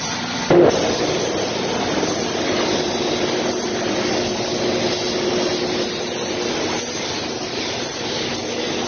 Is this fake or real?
real